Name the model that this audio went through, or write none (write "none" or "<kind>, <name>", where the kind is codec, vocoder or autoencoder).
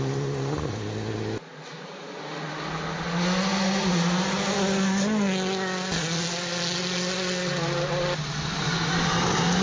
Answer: none